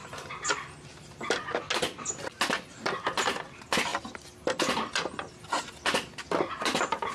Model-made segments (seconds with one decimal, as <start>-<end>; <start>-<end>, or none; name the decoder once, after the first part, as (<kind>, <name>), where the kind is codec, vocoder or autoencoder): none